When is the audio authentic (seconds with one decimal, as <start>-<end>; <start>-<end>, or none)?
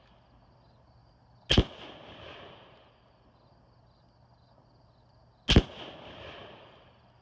0.0-7.2